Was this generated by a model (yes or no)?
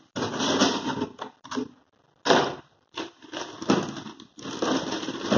no